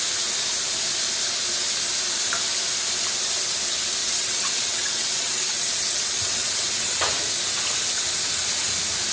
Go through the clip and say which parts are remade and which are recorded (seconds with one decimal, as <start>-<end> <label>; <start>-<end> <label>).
0.0-4.0 recorded; 4.0-7.1 remade; 7.1-9.1 recorded